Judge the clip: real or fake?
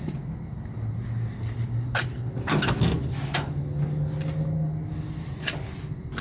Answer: real